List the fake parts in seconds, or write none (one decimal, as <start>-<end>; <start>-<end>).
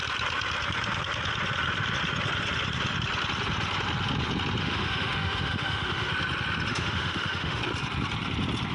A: 4.6-6.1; 6.7-7.6